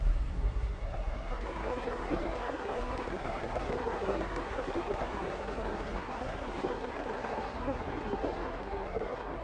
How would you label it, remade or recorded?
remade